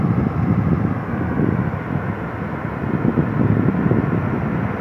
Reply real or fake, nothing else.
real